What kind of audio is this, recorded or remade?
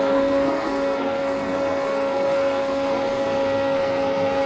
remade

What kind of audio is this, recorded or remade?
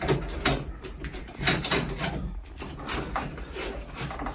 recorded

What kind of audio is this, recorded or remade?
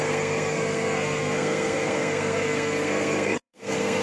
remade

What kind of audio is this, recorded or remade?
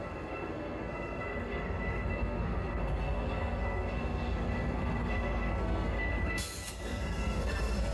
remade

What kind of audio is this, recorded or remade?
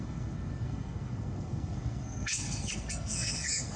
remade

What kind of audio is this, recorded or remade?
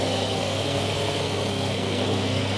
remade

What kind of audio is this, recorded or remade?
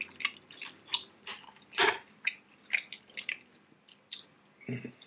recorded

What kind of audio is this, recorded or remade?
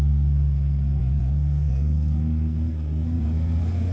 remade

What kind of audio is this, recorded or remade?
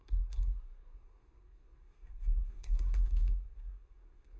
remade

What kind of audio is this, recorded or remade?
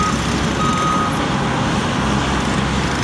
recorded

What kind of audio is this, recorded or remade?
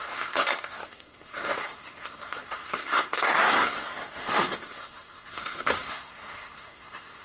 remade